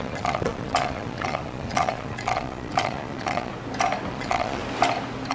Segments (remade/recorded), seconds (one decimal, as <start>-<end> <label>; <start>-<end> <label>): 0.0-3.5 remade; 3.5-4.1 recorded; 4.1-4.6 remade; 4.6-5.3 recorded